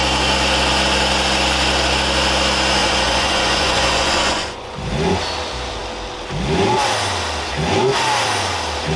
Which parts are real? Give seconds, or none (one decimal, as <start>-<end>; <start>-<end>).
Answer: 0.0-2.8; 4.9-9.0